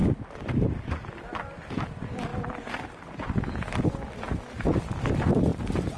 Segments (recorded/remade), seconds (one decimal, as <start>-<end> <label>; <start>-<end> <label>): 0.0-0.5 remade; 0.5-5.5 recorded; 5.5-6.0 remade